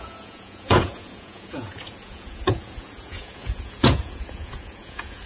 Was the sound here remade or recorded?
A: remade